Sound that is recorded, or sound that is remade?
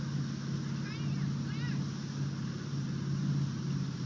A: recorded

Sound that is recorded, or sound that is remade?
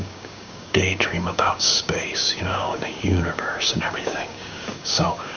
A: remade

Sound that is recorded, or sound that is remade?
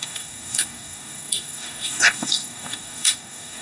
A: remade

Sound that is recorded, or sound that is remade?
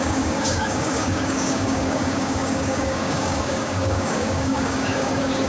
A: remade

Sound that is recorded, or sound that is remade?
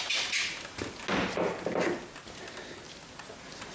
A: recorded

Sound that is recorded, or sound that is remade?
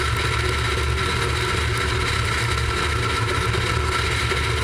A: recorded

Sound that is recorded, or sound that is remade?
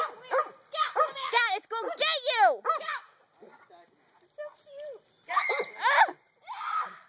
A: recorded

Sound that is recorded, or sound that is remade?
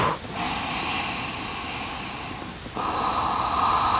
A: recorded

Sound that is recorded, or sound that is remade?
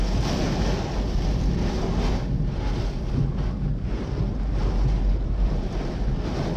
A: recorded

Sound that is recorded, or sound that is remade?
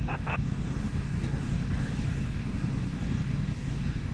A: remade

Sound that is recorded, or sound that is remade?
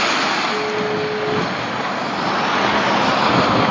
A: recorded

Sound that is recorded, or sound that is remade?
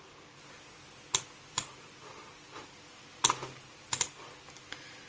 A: recorded